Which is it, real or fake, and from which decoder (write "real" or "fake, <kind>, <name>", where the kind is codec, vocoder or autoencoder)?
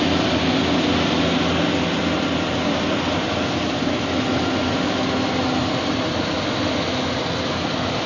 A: real